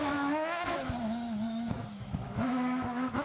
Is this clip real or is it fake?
fake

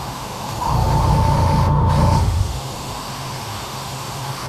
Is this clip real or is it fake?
fake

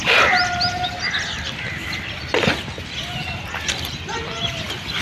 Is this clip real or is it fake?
real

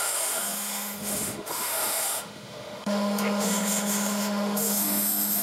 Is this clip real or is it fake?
fake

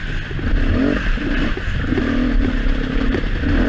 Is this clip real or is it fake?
real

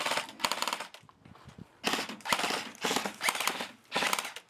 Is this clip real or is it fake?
real